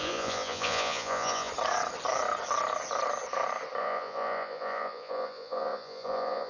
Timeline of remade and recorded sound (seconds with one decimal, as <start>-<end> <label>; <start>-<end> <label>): 0.0-1.5 remade; 1.5-3.8 recorded; 3.8-6.5 remade